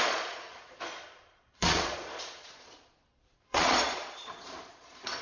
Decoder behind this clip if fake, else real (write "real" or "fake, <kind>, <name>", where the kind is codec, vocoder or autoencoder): fake, vocoder, Vocos